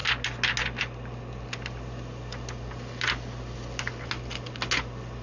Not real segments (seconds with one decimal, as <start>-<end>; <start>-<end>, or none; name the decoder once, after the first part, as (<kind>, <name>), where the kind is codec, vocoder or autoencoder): none